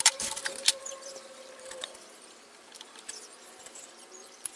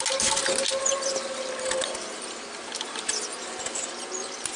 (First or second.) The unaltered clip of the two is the second